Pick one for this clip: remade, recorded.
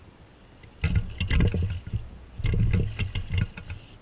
recorded